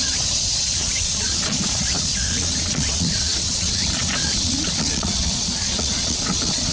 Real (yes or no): no